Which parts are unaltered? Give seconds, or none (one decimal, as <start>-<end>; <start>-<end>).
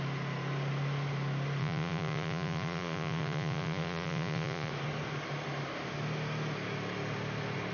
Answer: 0.0-1.6; 4.7-7.7